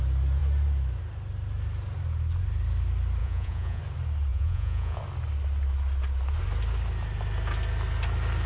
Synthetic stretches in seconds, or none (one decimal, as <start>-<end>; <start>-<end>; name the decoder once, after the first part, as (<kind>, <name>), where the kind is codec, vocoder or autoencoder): 3.2-3.8 (vocoder, Vocos); 4.3-5.0